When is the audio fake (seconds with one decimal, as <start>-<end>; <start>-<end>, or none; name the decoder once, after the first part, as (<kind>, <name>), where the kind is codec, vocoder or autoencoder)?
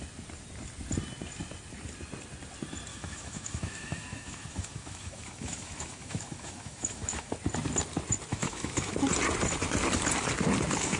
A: 2.9-7.3 (autoencoder, DAC-VAE); 8.3-8.9